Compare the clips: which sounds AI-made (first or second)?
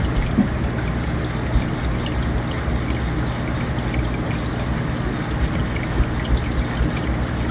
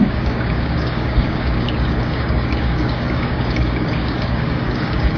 second